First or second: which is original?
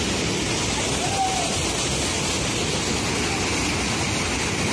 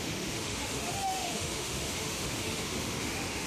first